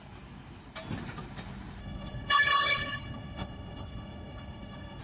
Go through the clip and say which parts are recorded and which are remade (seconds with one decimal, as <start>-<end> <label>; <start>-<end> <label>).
0.0-1.8 recorded; 1.8-5.0 remade